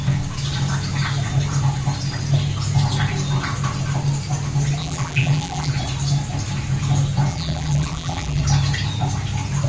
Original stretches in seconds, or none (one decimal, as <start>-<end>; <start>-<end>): 0.0-4.8; 5.7-7.3; 8.4-9.7